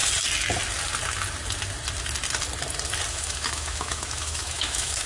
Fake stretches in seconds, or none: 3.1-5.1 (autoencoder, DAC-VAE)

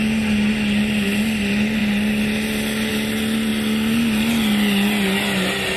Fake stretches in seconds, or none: none

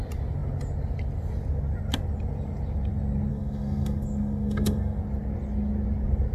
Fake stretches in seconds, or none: 3.3-5.0 (codec, SNAC)